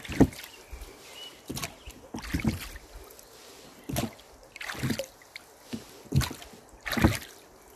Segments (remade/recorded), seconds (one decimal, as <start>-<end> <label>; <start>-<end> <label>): 0.0-7.8 recorded